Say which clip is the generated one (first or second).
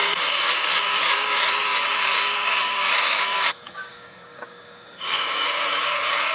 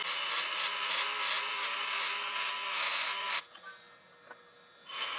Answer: first